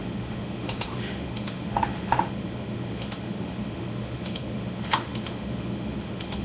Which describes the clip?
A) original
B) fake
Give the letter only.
B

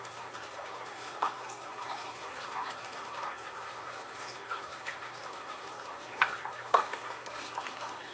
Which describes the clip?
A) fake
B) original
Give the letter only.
A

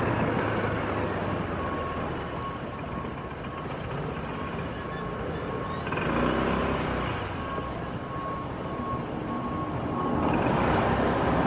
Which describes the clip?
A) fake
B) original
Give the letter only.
B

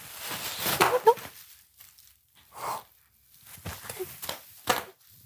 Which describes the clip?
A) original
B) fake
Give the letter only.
A